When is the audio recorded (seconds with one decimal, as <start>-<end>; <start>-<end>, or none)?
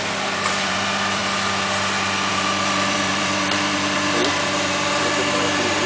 1.2-2.3